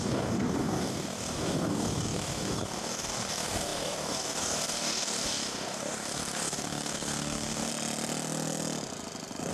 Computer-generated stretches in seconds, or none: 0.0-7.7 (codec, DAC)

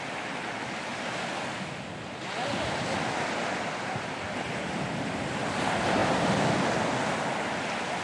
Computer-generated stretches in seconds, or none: none